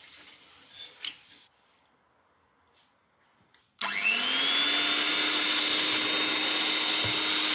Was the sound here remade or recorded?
recorded